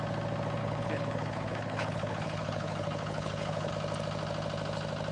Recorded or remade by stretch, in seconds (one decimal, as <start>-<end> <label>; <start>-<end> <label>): 0.0-0.6 recorded; 0.6-3.7 remade; 3.7-5.1 recorded